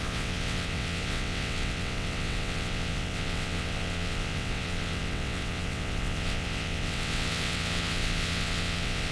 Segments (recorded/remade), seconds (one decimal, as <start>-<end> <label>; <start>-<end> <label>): 0.0-9.1 remade